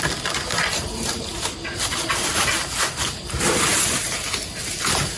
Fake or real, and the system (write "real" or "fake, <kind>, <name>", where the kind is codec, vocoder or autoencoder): real